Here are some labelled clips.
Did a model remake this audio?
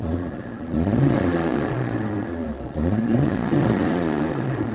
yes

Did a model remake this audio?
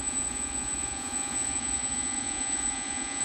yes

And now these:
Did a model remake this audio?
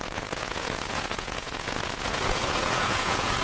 yes